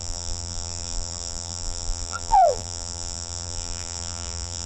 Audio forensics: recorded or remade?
remade